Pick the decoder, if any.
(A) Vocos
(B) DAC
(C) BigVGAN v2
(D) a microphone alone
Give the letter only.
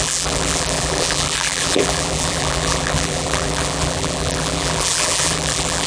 C